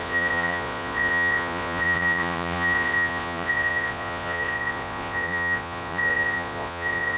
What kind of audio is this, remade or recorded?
remade